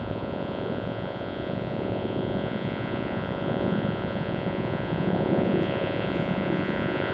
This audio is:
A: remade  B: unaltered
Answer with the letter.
A